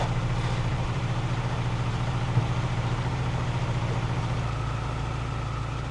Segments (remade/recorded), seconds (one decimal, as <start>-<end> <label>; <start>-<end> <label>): 0.0-0.7 recorded; 0.7-4.2 remade; 4.2-5.9 recorded